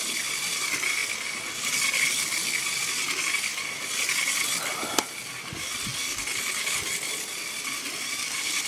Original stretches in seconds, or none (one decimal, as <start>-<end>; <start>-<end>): 0.0-8.7